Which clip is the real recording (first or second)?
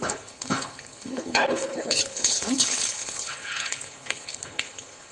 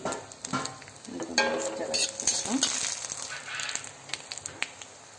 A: second